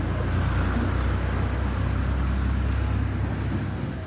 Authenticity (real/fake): real